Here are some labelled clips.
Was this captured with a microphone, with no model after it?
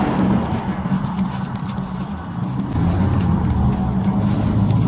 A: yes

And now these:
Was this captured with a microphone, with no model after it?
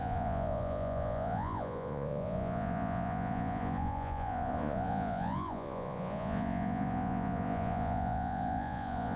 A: no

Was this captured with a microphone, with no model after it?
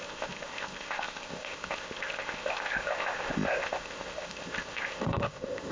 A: no